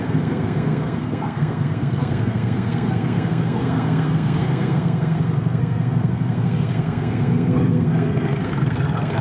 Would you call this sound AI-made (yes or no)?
yes